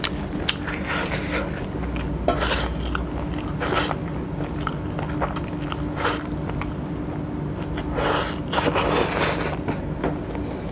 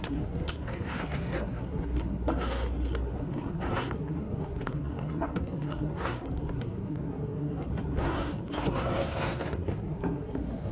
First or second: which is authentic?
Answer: first